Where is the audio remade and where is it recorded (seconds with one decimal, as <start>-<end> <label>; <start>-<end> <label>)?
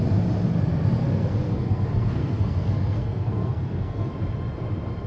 0.0-1.0 recorded; 1.0-4.1 remade; 4.1-5.1 recorded